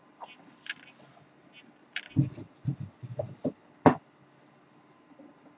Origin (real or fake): real